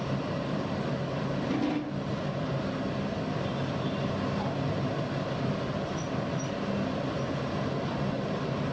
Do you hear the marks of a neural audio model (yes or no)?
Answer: no